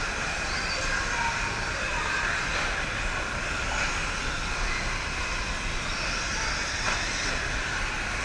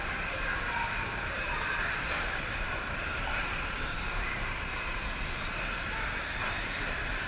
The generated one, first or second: second